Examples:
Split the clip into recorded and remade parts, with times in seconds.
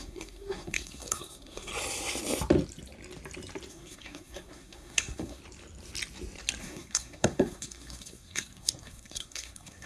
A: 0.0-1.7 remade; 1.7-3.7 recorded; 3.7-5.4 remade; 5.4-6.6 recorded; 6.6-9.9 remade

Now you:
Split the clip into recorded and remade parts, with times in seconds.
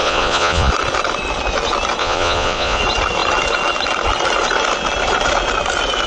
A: 0.0-0.7 remade; 0.7-2.0 recorded; 2.0-2.8 remade; 2.8-6.1 recorded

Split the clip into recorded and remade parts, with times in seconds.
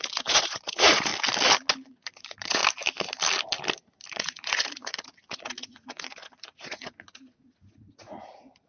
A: 0.0-1.1 remade; 1.1-1.9 recorded; 1.9-2.6 remade; 2.6-4.1 recorded; 4.1-8.7 remade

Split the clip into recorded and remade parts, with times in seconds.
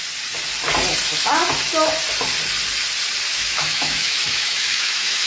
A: 0.0-3.3 recorded; 3.3-5.3 remade